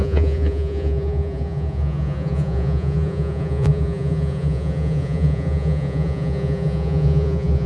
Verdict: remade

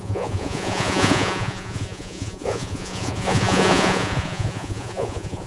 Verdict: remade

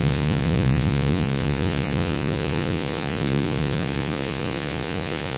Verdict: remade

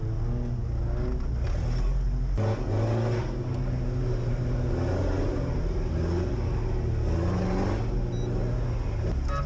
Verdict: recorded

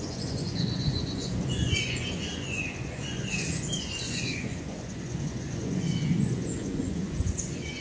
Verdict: remade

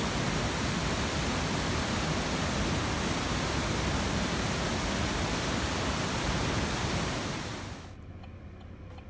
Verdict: recorded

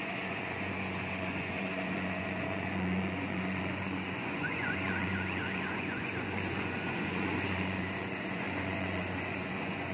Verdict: remade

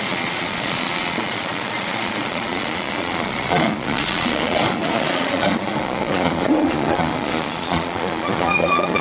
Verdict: remade